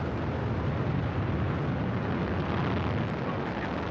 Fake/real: real